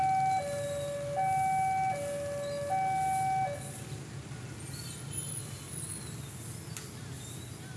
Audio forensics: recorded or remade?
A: recorded